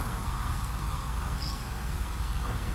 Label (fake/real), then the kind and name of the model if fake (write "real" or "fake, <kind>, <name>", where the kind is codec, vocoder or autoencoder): fake, codec, SNAC